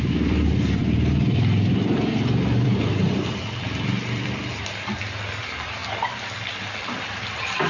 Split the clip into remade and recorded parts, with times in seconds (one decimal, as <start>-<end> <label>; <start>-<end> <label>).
0.0-5.8 remade; 5.8-6.4 recorded; 6.4-7.7 remade